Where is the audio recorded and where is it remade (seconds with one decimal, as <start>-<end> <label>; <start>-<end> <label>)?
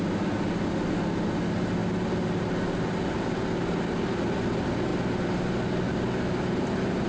0.0-7.1 recorded